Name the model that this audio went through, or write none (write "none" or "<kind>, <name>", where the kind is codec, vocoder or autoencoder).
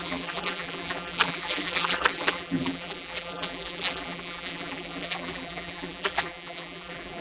vocoder, BigVGAN v2